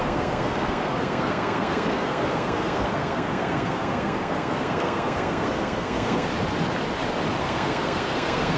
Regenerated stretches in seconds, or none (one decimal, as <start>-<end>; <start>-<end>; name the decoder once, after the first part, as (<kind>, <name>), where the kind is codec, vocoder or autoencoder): 0.0-6.3 (codec, SNAC); 7.4-8.6